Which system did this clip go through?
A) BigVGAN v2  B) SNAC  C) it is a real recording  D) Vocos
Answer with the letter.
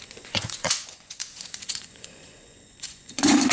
D